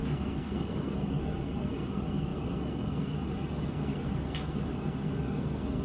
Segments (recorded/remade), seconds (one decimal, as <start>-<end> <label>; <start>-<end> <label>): 0.0-5.8 remade